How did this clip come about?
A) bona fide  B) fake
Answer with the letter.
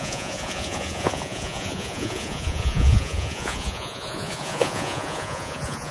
B